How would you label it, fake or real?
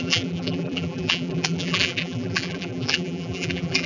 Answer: fake